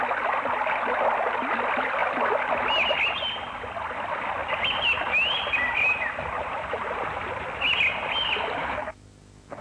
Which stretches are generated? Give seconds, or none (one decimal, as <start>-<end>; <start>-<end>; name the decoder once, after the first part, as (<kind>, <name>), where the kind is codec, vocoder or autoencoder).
8.6-9.6 (autoencoder, DAC-VAE)